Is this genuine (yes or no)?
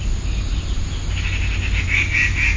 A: yes